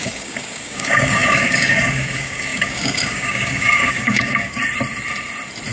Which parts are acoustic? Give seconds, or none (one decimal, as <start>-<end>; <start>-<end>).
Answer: 4.6-5.7